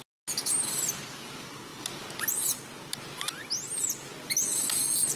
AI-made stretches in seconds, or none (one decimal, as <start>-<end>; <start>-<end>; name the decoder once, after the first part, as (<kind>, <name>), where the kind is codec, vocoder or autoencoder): none